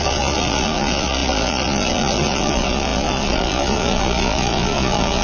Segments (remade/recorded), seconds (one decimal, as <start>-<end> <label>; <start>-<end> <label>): 0.0-5.2 remade